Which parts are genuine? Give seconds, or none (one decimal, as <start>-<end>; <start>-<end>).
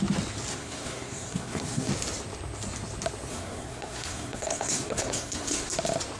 0.0-0.5; 1.9-3.3; 5.7-6.2